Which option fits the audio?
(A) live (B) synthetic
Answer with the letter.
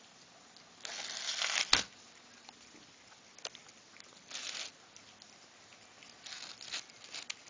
A